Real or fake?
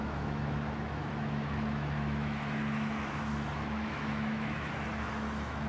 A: fake